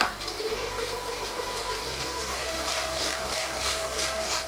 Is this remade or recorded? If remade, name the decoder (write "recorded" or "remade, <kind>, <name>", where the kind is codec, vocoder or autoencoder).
remade, codec, DAC